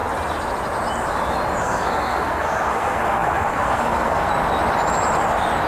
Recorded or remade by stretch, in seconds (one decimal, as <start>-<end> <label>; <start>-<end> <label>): 0.0-1.6 recorded; 1.6-4.3 remade; 4.3-5.7 recorded